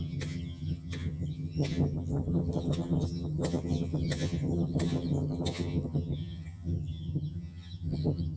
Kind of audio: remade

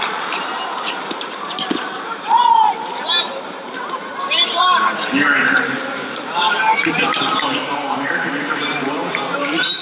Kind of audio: remade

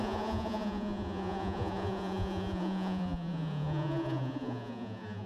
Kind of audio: remade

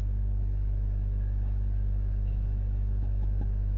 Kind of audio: remade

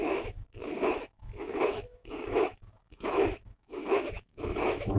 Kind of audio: remade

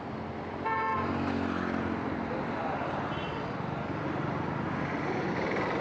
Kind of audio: recorded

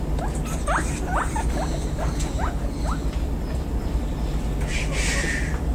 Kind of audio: recorded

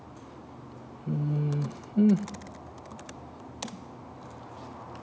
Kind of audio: recorded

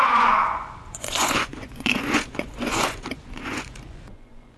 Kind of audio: remade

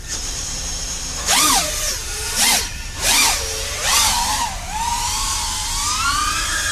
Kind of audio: remade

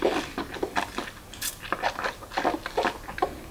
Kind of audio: recorded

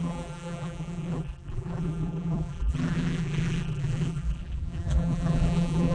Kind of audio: remade